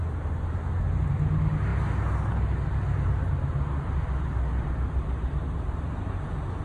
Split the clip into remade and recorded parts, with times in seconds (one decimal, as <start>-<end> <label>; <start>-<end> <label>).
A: 0.0-6.6 recorded